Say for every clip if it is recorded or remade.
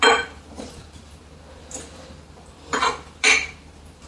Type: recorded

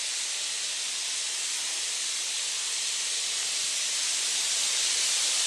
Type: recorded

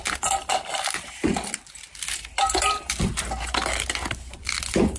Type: remade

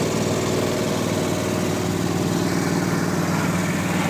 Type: recorded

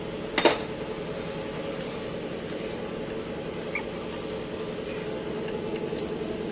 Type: recorded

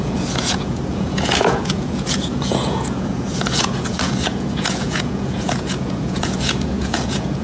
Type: remade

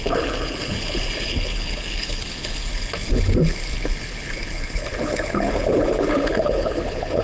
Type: remade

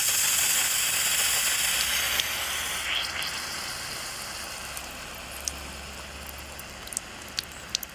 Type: recorded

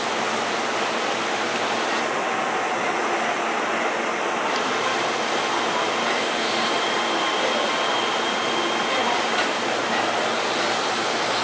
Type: recorded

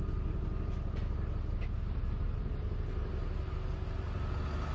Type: recorded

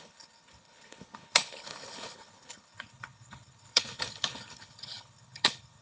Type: remade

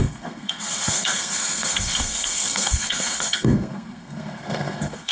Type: remade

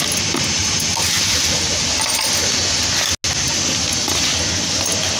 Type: recorded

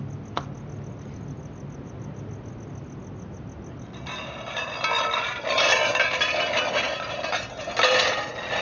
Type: recorded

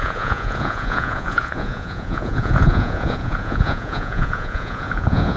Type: remade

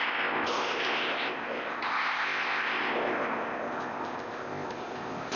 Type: remade